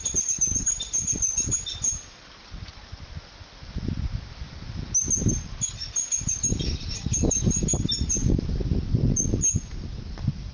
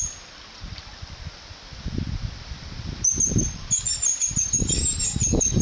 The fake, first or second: second